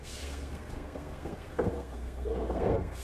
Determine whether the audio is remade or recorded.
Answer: remade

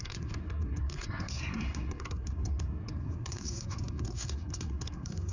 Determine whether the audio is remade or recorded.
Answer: remade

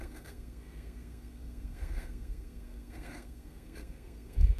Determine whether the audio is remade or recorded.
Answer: remade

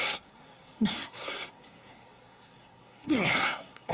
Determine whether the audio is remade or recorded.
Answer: remade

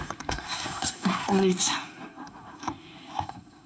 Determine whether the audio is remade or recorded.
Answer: remade